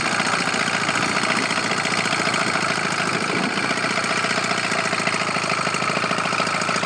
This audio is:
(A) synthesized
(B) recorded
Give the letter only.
B